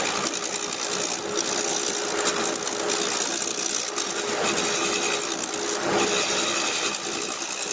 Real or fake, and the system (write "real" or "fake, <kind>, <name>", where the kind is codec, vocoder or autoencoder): real